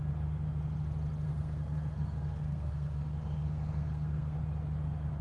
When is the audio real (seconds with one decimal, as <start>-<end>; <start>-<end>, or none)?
0.0-1.3; 4.4-5.2